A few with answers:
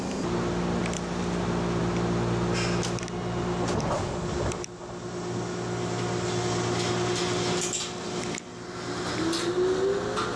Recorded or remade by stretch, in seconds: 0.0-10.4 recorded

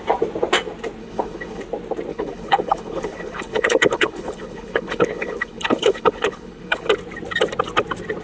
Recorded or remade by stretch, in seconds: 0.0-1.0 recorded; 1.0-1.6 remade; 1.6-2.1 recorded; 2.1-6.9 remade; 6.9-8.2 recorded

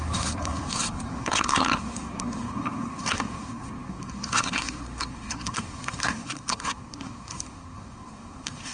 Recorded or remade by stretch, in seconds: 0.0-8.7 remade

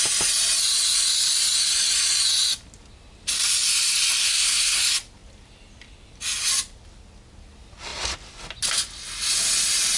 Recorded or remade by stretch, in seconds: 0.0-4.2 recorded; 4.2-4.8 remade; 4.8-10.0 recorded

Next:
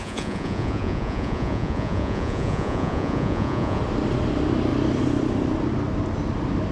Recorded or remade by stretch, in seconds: 0.0-3.8 remade; 3.8-6.7 recorded

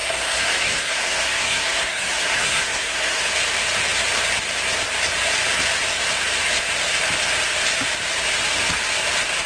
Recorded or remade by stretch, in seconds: 0.0-3.2 remade; 3.2-9.5 recorded